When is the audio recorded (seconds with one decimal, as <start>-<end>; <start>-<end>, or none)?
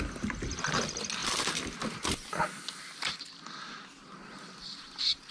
0.0-5.3